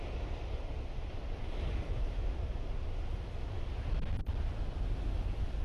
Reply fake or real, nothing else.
real